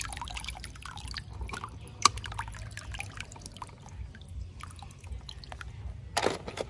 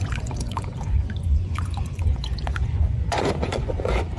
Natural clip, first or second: first